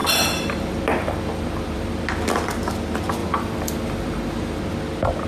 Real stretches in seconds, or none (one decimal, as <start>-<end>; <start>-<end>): 2.0-3.2; 4.6-5.3